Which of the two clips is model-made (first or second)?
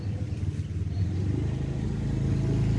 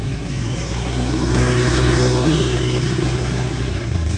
second